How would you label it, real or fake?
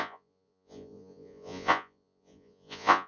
fake